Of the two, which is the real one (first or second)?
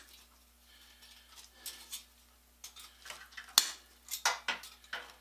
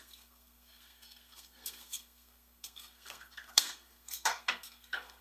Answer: first